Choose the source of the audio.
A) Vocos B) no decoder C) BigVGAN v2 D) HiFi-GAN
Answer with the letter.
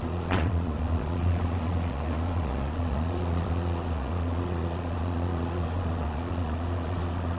A